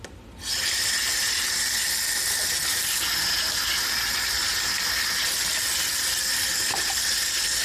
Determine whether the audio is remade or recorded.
recorded